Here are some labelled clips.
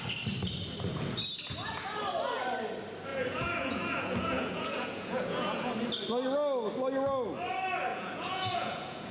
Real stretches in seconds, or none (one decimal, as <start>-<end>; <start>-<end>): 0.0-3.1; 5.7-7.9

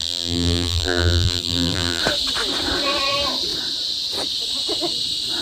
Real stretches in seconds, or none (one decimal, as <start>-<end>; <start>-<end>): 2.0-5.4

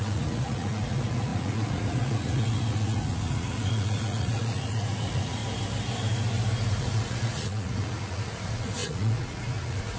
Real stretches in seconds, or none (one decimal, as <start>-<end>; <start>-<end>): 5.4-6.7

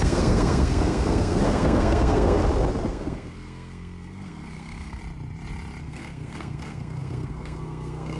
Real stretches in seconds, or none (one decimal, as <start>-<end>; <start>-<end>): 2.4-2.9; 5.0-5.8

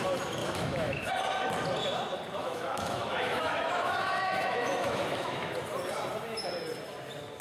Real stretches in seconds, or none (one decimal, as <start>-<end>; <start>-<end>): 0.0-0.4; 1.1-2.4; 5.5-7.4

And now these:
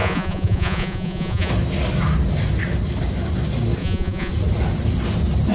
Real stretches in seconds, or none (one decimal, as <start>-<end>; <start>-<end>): 1.5-3.8; 4.3-5.5